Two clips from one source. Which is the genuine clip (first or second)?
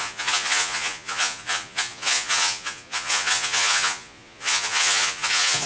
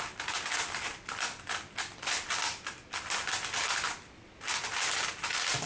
second